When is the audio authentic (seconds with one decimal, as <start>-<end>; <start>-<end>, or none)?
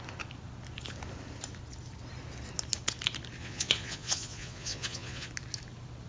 0.0-3.4; 5.3-6.1